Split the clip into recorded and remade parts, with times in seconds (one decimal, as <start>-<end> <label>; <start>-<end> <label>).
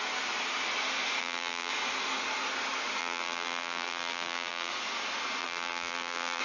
0.0-1.2 recorded; 1.2-1.7 remade; 1.7-3.0 recorded; 3.0-4.7 remade; 4.7-5.4 recorded; 5.4-6.4 remade